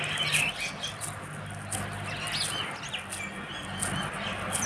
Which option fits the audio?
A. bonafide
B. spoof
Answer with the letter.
A